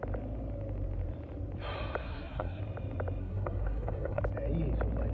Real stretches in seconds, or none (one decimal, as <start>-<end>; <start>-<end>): 0.0-2.0; 2.6-3.2; 4.2-5.1